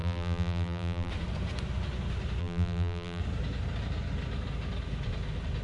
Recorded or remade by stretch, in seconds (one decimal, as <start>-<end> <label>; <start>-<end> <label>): 0.0-1.1 remade; 1.1-2.4 recorded; 2.4-3.2 remade; 3.2-5.6 recorded